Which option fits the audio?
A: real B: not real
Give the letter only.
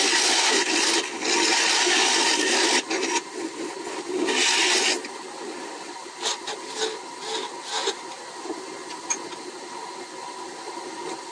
A